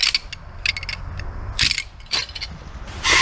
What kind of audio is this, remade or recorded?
recorded